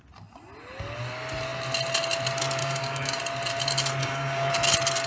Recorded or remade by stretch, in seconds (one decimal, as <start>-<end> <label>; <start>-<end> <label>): 0.0-2.6 recorded; 2.6-3.2 remade; 3.2-4.0 recorded; 4.0-4.5 remade; 4.5-5.1 recorded